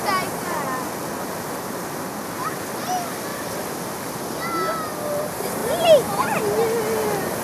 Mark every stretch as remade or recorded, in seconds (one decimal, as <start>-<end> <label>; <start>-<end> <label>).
0.0-3.3 recorded; 3.3-4.5 remade; 4.5-7.4 recorded

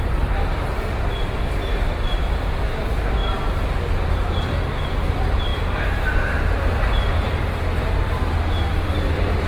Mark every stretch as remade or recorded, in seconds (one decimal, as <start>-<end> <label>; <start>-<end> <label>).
0.0-3.2 remade; 3.2-4.1 recorded; 4.1-9.5 remade

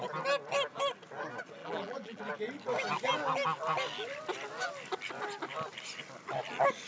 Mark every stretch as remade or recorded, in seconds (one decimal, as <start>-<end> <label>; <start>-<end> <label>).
0.0-1.6 recorded; 1.6-2.2 remade; 2.2-6.9 recorded

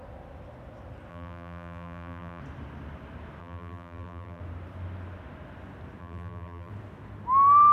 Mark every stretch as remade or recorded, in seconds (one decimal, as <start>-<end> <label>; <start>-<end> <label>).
0.0-1.1 recorded; 1.1-2.4 remade; 2.4-3.4 recorded; 3.4-4.4 remade; 4.4-6.0 recorded; 6.0-6.7 remade; 6.7-7.7 recorded

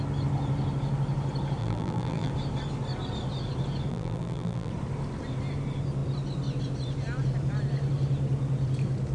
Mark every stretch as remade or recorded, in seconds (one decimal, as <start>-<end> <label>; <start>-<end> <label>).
0.0-1.6 recorded; 1.6-2.3 remade; 2.3-3.9 recorded; 3.9-4.7 remade; 4.7-9.1 recorded

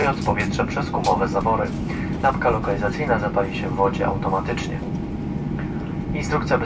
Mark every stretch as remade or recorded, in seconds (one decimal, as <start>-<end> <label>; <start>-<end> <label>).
0.0-2.3 remade; 2.3-6.7 recorded

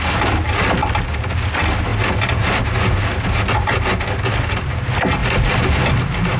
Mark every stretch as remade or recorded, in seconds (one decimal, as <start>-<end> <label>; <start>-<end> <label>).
0.0-5.2 recorded; 5.2-5.8 remade; 5.8-6.4 recorded

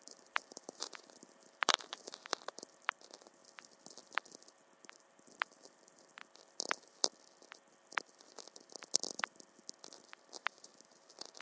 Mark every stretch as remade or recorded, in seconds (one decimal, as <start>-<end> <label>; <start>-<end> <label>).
0.0-3.4 remade; 3.4-4.9 recorded; 4.9-6.2 remade; 6.2-10.3 recorded; 10.3-11.4 remade